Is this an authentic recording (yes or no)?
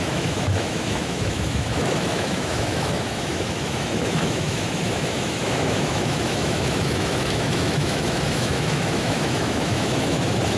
no